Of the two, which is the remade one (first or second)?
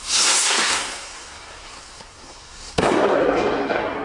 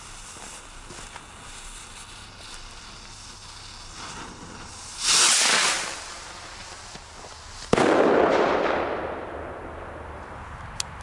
first